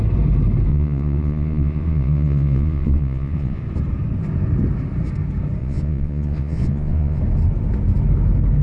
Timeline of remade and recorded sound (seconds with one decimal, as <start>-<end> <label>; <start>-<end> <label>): 0.0-0.7 recorded; 0.7-3.6 remade; 3.6-5.6 recorded; 5.6-7.2 remade; 7.2-8.6 recorded